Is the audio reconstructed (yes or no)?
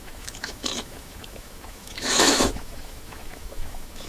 yes